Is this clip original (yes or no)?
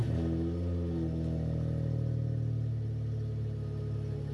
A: yes